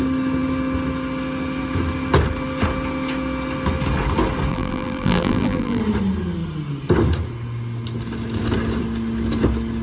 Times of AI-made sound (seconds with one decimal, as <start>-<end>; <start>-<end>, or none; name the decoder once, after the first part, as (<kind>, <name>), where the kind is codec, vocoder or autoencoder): 4.5-5.8 (vocoder, BigVGAN v2)